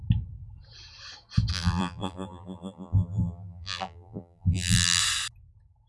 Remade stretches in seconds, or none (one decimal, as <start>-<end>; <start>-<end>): 1.5-5.0